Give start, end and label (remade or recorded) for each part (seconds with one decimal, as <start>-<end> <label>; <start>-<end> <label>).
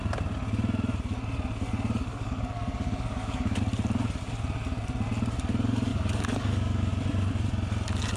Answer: 0.0-2.1 recorded; 2.1-3.6 remade; 3.6-5.9 recorded; 5.9-6.9 remade; 6.9-8.2 recorded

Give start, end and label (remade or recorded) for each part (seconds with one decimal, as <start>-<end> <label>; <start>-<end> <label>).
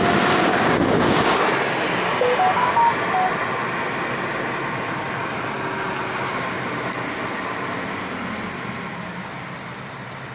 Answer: 0.0-0.5 recorded; 0.5-1.4 remade; 1.4-10.3 recorded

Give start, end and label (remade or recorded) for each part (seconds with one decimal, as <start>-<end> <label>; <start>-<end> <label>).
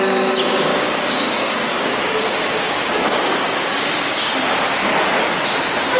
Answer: 0.0-0.7 recorded; 0.7-4.3 remade; 4.3-6.0 recorded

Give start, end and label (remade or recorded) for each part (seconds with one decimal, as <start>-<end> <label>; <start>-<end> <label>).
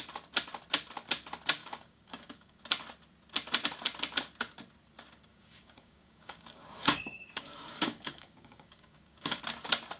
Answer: 0.0-1.6 recorded; 1.6-2.6 remade; 2.6-5.3 recorded; 5.3-9.4 remade; 9.4-10.0 recorded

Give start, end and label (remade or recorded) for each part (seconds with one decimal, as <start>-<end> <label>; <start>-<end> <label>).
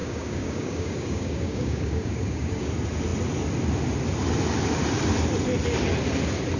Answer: 0.0-2.7 remade; 2.7-6.6 recorded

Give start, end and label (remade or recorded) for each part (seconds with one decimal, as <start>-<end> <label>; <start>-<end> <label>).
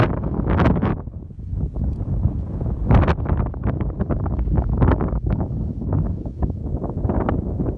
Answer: 0.0-0.9 remade; 0.9-3.5 recorded; 3.5-6.6 remade; 6.6-7.8 recorded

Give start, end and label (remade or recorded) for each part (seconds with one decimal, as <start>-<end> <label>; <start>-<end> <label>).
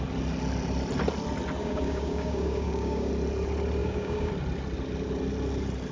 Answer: 0.0-1.6 recorded; 1.6-3.1 remade; 3.1-3.8 recorded; 3.8-4.3 remade; 4.3-5.9 recorded